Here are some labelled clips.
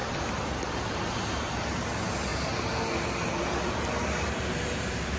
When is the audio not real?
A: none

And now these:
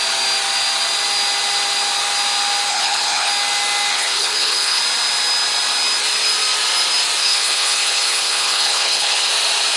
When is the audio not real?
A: 2.7-3.3 (codec, HILCodec); 3.9-4.8; 7.2-9.3

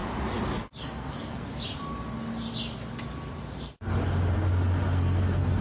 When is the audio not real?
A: 0.8-1.5 (codec, SNAC); 4.9-5.6

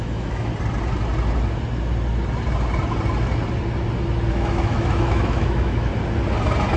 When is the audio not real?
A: 0.0-0.5 (autoencoder, DAC-VAE); 4.3-5.9

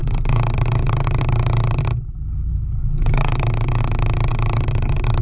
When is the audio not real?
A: 0.0-1.8 (codec, DAC); 2.5-3.8; 4.3-5.2

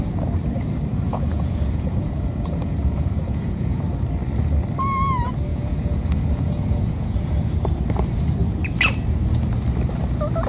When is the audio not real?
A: 0.9-3.8 (vocoder, Vocos); 5.5-7.3

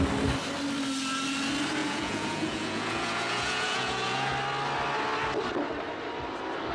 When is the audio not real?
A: 1.8-4.3 (vocoder, Vocos)

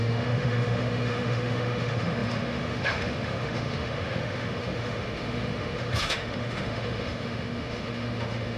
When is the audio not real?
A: 0.0-8.6 (autoencoder, DAC-VAE)